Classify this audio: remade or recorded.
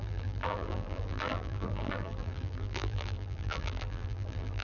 remade